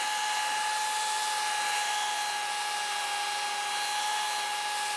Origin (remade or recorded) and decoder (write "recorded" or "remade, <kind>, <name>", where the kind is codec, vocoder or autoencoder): recorded